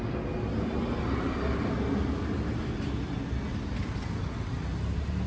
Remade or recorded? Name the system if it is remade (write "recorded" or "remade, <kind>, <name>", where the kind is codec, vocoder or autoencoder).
recorded